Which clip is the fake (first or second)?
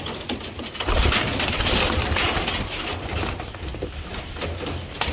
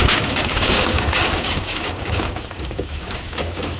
second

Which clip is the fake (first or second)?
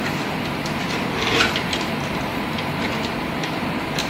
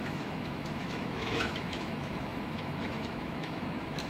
second